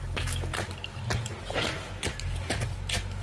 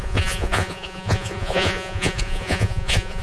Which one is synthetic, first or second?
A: second